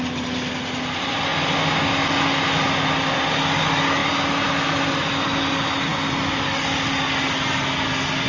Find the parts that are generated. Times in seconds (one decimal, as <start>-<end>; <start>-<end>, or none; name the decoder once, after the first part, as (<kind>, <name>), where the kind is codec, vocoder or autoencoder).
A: none

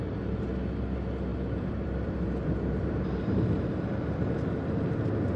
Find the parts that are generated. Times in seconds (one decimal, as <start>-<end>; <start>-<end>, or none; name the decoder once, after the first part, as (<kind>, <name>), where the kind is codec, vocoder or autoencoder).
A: 1.3-4.5 (vocoder, BigVGAN v2)